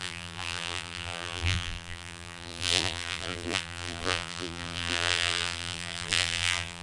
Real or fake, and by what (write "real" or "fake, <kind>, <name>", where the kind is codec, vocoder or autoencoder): fake, vocoder, BigVGAN v2